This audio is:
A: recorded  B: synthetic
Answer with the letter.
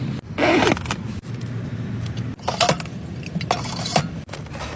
A